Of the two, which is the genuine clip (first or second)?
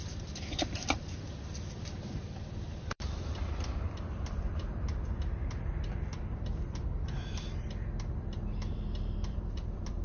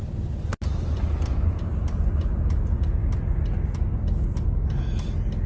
second